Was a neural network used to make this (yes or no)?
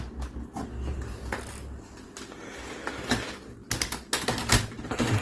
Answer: no